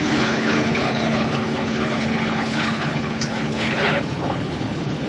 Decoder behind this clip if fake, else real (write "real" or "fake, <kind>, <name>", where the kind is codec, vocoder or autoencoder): fake, codec, HILCodec